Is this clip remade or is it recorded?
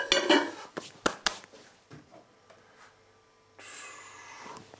recorded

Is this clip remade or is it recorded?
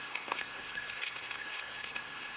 remade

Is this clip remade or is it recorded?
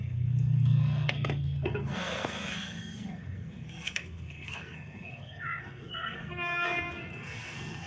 remade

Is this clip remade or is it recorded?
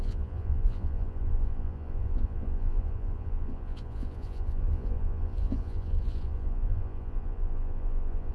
remade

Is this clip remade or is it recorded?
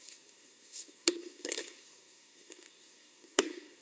remade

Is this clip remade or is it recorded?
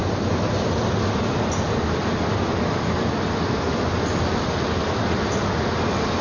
recorded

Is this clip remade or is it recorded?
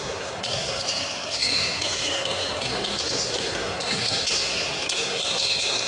remade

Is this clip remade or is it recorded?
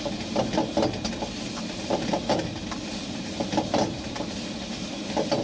recorded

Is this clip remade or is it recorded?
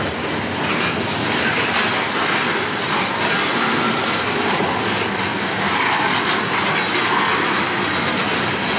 recorded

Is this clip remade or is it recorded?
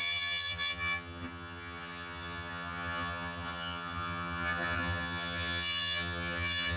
remade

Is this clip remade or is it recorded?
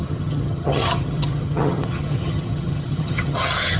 remade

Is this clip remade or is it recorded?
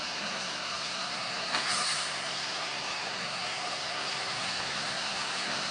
remade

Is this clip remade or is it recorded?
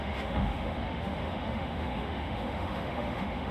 remade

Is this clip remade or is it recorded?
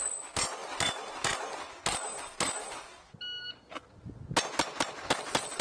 recorded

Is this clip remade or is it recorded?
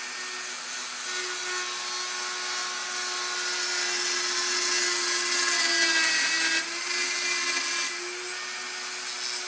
recorded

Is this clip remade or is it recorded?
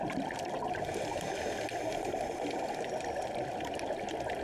recorded